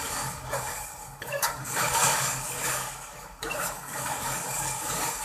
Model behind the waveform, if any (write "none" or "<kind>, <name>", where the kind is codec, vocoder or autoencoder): codec, DAC